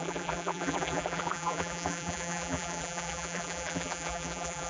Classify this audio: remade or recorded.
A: remade